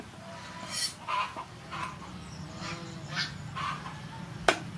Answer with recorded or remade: recorded